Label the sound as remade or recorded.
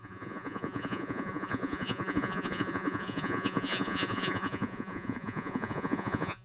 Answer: remade